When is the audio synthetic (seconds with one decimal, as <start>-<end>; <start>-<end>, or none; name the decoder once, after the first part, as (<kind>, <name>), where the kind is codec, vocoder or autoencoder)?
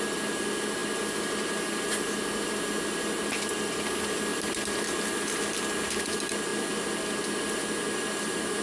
none